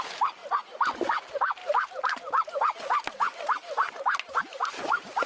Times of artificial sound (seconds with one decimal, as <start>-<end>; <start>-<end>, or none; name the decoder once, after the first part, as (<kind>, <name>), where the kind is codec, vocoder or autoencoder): none